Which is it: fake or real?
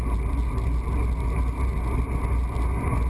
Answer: real